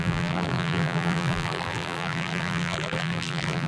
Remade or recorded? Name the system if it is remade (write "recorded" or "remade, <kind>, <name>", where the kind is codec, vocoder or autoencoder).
remade, vocoder, BigVGAN v2